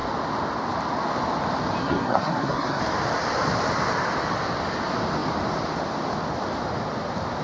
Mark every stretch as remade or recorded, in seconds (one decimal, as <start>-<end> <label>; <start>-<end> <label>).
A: 0.0-1.8 recorded; 1.8-2.8 remade; 2.8-7.4 recorded